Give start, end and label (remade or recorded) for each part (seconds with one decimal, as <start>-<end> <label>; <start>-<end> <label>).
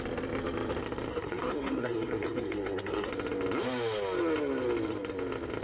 0.0-1.1 recorded; 1.1-3.1 remade; 3.1-5.6 recorded